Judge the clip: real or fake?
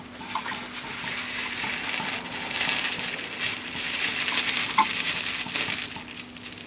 real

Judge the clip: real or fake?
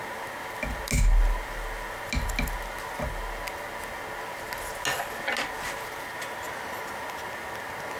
real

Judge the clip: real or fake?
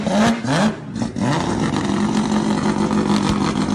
real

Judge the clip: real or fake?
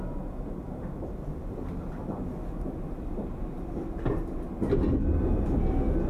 real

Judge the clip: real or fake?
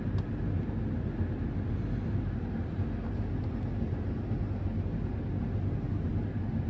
real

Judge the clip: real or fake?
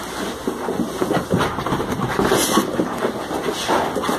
real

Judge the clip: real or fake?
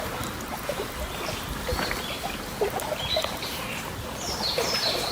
real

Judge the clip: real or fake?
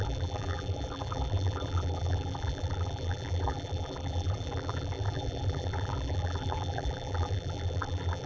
fake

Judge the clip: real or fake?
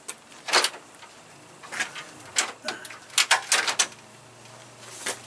real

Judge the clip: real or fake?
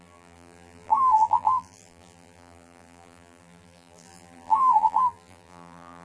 fake